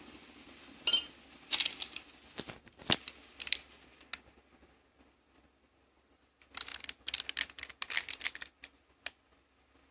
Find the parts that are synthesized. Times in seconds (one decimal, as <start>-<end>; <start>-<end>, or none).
none